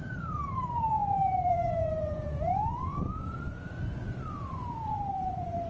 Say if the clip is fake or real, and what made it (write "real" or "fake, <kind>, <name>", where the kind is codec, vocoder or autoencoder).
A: fake, vocoder, Vocos